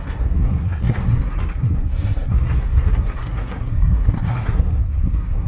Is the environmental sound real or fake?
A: fake